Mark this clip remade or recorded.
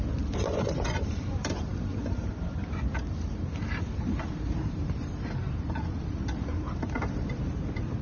remade